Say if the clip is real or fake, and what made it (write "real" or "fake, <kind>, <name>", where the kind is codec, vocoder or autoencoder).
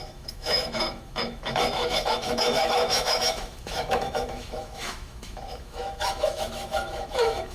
fake, autoencoder, DAC-VAE